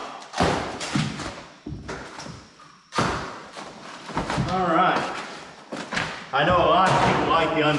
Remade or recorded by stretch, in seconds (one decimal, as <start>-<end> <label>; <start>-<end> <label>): 0.0-2.7 recorded; 2.7-7.8 remade